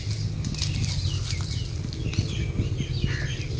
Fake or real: real